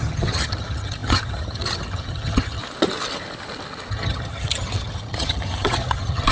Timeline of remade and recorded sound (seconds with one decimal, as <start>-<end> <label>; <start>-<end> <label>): 0.0-2.6 remade; 2.6-3.9 recorded; 3.9-6.3 remade